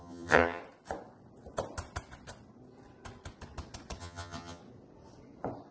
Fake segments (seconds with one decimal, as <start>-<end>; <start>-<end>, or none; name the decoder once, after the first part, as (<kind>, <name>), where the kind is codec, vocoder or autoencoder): 0.0-0.6 (vocoder, HiFi-GAN); 4.0-4.6